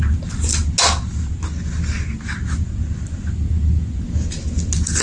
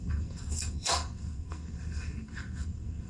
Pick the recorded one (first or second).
first